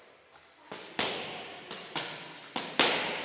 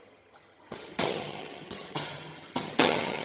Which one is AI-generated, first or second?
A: second